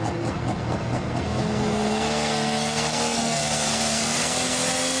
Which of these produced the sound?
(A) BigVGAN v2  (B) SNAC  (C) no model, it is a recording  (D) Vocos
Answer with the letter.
B